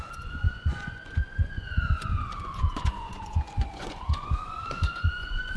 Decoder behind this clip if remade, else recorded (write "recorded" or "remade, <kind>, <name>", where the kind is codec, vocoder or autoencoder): remade, vocoder, Vocos